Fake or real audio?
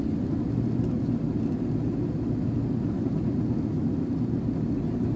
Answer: real